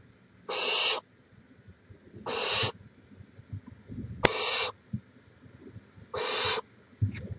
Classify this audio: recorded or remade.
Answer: recorded